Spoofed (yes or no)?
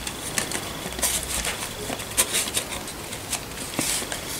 no